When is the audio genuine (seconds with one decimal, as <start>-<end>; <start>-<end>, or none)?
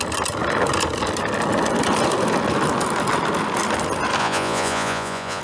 0.0-4.2